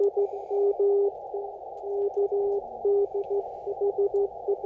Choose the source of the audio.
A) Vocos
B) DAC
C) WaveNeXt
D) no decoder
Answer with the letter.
D